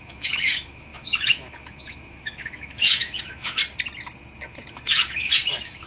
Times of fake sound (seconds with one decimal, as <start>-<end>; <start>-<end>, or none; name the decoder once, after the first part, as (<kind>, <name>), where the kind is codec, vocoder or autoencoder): 0.0-3.6 (autoencoder, DAC-VAE); 4.7-5.9